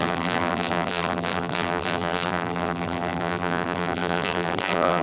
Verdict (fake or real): fake